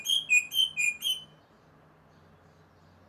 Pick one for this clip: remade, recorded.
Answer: recorded